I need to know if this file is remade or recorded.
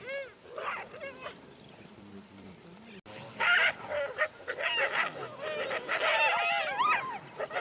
recorded